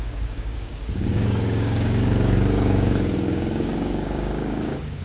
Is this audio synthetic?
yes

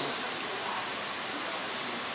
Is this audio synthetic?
no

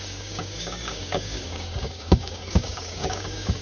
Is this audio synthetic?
yes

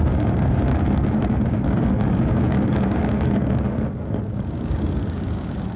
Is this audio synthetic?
yes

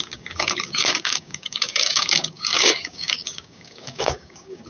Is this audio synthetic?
yes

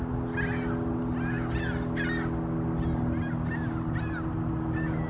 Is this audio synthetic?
no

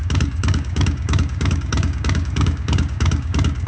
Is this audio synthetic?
yes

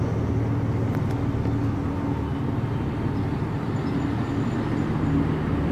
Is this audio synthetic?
no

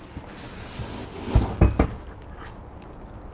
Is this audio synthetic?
no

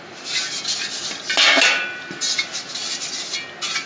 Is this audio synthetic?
no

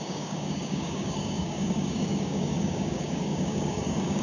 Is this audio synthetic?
yes